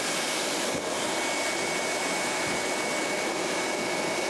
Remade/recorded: recorded